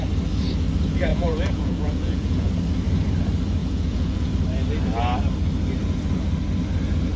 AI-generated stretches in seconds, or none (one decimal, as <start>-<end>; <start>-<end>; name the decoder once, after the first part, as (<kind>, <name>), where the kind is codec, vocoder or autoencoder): 1.1-2.5 (vocoder, Vocos); 3.6-4.3

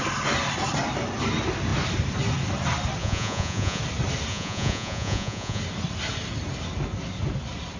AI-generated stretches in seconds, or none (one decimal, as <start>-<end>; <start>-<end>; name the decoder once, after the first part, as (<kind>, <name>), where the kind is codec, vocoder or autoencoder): 3.0-3.8 (vocoder, Vocos); 4.3-5.6

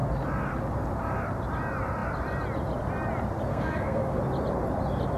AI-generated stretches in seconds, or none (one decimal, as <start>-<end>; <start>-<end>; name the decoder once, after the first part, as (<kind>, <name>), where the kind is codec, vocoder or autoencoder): 3.5-4.2 (codec, SNAC)

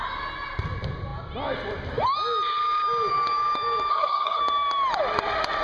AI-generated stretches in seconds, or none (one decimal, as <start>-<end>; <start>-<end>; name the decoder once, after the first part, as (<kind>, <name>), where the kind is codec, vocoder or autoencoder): 3.9-4.4 (codec, SNAC)

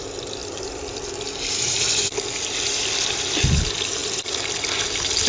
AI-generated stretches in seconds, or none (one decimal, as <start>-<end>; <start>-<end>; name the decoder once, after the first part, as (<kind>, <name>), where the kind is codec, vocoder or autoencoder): 0.4-3.6 (vocoder, BigVGAN v2)

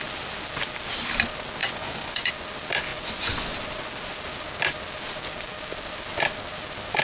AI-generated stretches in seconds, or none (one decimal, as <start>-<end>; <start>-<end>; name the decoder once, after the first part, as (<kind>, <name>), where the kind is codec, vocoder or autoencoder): 1.6-2.3 (vocoder, Vocos); 2.9-3.5